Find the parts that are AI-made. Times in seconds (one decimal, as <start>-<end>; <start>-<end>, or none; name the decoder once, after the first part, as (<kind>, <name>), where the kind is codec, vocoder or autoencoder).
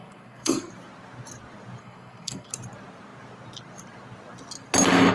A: 0.0-0.7 (codec, SNAC); 1.8-2.5